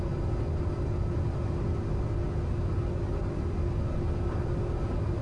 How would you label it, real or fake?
real